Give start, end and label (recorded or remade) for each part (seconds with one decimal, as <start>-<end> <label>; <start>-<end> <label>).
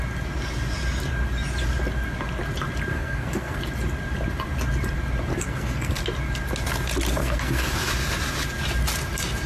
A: 0.0-2.9 recorded; 2.9-3.6 remade; 3.6-5.3 recorded; 5.3-6.0 remade; 6.0-7.2 recorded; 7.2-7.9 remade; 7.9-9.5 recorded